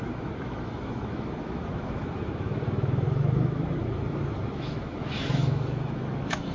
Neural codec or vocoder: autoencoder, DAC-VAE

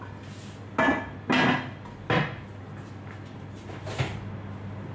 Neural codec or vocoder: none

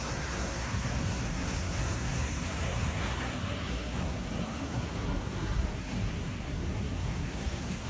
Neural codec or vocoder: codec, SNAC